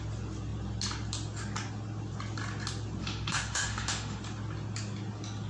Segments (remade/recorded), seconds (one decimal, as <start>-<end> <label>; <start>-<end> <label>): 0.0-3.0 recorded; 3.0-4.2 remade; 4.2-5.5 recorded